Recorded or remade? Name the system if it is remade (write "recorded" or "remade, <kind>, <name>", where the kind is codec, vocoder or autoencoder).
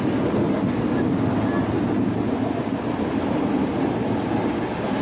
recorded